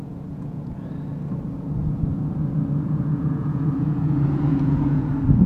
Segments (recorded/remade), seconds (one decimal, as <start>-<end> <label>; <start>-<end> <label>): 0.0-0.9 remade; 0.9-1.8 recorded; 1.8-5.1 remade; 5.1-5.5 recorded